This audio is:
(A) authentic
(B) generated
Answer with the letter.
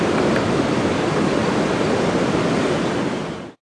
A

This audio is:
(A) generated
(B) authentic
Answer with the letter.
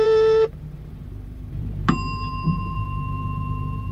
A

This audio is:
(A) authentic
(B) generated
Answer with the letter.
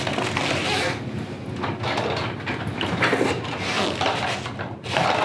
A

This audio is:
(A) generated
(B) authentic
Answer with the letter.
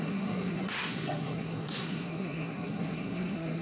A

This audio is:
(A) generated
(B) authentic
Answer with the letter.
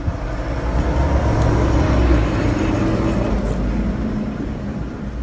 B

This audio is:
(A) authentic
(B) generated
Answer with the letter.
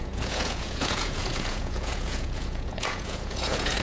B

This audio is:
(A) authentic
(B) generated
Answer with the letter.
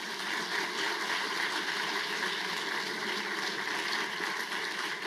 A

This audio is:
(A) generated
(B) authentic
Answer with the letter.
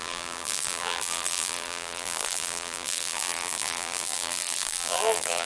A